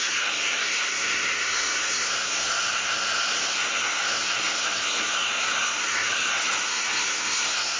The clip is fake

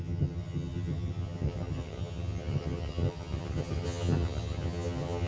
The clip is fake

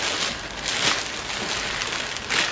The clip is real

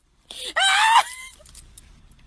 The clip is fake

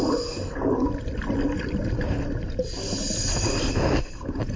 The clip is real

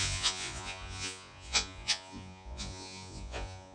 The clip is fake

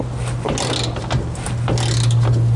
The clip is real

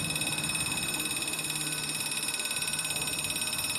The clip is fake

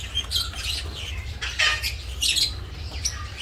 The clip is real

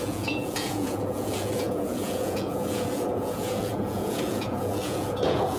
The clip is fake